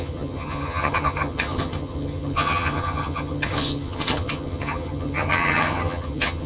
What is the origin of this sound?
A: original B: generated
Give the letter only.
B